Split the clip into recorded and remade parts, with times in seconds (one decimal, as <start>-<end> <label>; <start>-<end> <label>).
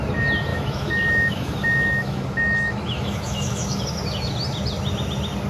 0.0-0.5 recorded; 0.5-3.8 remade; 3.8-5.5 recorded